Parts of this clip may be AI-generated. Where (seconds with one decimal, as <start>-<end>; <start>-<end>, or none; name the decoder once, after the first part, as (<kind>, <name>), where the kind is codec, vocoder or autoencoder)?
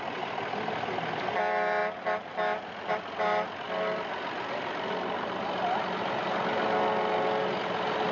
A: none